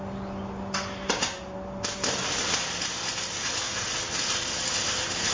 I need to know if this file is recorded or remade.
recorded